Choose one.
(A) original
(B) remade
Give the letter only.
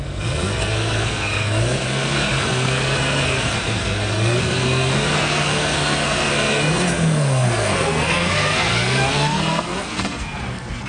B